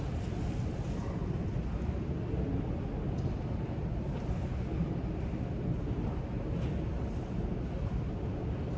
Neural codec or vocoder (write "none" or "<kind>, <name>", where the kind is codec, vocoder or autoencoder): none